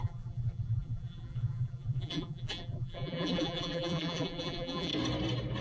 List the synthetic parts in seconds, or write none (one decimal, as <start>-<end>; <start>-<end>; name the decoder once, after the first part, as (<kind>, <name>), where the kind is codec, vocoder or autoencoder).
0.0-4.9 (vocoder, BigVGAN v2)